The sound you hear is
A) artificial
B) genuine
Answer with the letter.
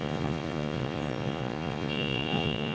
A